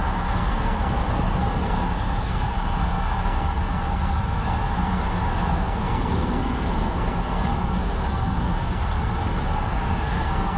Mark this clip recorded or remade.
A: remade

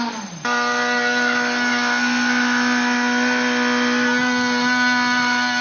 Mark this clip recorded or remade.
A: recorded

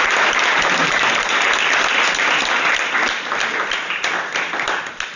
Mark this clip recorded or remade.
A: recorded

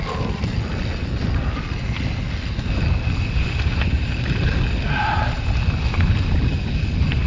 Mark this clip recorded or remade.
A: recorded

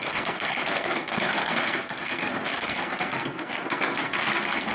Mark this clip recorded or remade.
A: remade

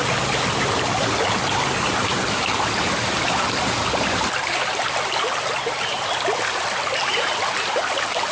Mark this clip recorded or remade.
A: recorded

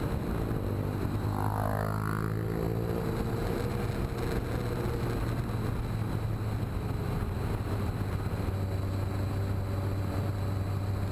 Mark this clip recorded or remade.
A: recorded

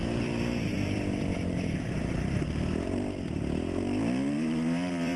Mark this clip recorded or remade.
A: remade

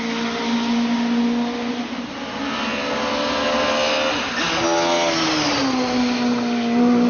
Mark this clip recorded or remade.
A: recorded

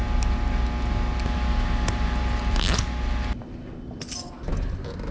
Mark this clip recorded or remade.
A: recorded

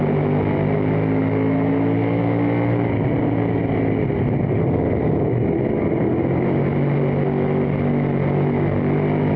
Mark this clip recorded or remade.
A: recorded